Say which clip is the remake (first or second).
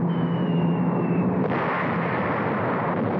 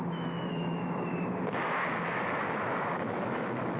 second